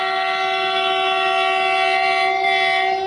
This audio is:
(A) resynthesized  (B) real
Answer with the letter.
B